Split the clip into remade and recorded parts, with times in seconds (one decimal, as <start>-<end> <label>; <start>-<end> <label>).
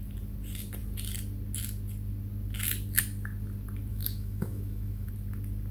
0.0-3.9 recorded; 3.9-5.1 remade; 5.1-5.7 recorded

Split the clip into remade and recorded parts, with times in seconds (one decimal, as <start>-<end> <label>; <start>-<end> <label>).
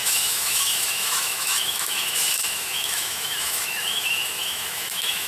0.0-5.3 remade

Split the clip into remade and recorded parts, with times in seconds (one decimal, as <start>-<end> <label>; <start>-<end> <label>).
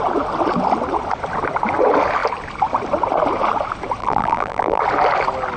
0.0-4.0 recorded; 4.0-4.8 remade; 4.8-5.6 recorded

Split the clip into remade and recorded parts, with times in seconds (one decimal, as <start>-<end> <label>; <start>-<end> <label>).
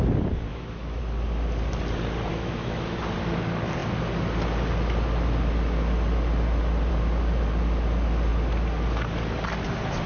0.0-0.5 recorded; 0.5-1.0 remade; 1.0-2.3 recorded; 2.3-3.0 remade; 3.0-10.1 recorded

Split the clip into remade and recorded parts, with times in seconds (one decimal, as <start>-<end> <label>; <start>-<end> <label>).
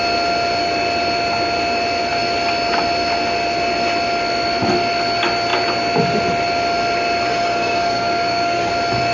0.0-7.3 recorded; 7.3-8.7 remade; 8.7-9.1 recorded